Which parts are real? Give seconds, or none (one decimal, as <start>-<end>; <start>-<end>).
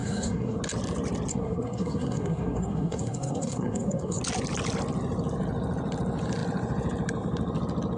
0.6-1.3; 4.2-8.0